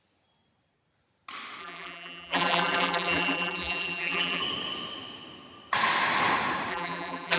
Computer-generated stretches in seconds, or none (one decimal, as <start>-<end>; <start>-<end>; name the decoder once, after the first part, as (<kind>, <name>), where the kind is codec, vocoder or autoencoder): 1.6-4.4 (vocoder, BigVGAN v2); 6.7-7.4